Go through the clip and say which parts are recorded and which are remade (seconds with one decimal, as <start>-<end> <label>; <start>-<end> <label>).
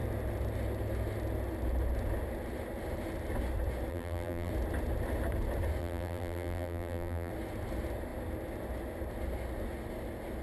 0.0-3.9 recorded; 3.9-4.5 remade; 4.5-5.8 recorded; 5.8-7.3 remade; 7.3-10.4 recorded